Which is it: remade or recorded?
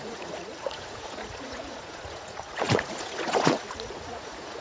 remade